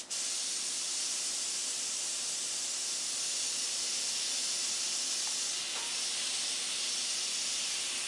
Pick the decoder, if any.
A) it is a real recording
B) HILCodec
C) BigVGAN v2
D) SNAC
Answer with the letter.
A